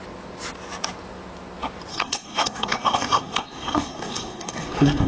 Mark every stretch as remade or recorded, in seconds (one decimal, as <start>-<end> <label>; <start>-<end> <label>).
0.0-1.9 recorded; 1.9-5.1 remade